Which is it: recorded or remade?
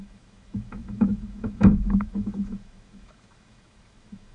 remade